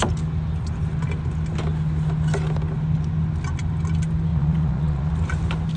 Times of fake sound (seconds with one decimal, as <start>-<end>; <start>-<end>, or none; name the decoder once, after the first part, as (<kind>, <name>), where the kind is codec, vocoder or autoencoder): 4.3-5.1 (vocoder, Vocos)